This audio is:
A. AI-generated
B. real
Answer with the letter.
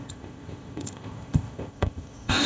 A